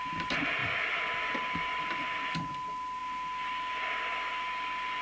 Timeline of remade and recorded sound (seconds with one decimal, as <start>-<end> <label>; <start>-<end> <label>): 0.0-5.0 recorded